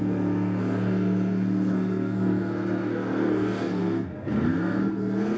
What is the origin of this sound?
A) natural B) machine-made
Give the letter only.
B